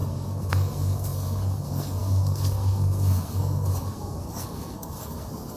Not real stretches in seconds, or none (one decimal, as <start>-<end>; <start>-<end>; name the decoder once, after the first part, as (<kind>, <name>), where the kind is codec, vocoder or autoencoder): 0.0-5.6 (codec, SNAC)